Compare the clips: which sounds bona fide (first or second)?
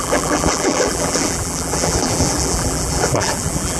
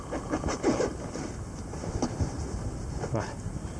second